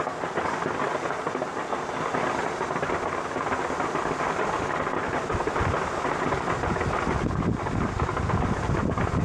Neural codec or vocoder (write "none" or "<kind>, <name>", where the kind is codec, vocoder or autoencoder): none